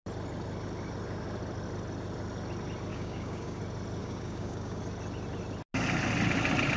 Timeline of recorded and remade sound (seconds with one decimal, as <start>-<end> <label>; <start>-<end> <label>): 0.0-2.9 recorded; 2.9-3.6 remade; 3.6-4.0 recorded; 4.0-4.8 remade; 4.8-6.8 recorded